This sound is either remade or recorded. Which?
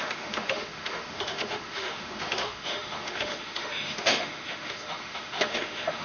remade